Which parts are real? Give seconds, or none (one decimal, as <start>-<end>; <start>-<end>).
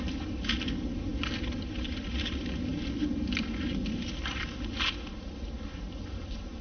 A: 0.0-6.6